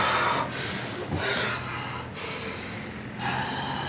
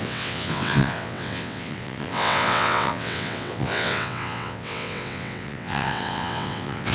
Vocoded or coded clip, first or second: second